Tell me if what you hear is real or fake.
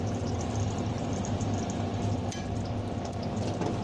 real